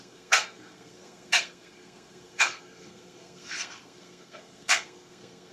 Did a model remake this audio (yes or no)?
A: yes